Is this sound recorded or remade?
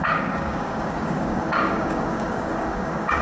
remade